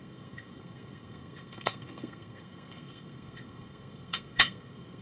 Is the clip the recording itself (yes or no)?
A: no